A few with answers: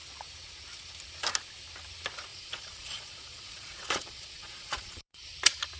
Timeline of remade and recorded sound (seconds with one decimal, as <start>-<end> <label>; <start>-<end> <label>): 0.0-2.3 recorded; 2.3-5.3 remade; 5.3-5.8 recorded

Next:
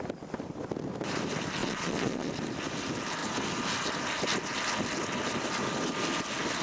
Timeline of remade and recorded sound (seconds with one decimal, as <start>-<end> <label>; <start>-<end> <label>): 0.0-1.6 recorded; 1.6-2.3 remade; 2.3-6.6 recorded

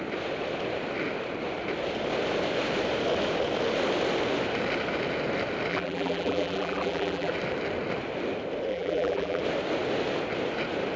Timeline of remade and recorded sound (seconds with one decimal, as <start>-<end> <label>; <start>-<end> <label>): 0.0-5.7 recorded; 5.7-7.3 remade; 7.3-8.7 recorded; 8.7-9.4 remade; 9.4-11.0 recorded